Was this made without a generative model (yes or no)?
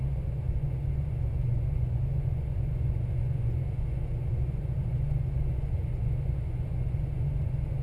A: no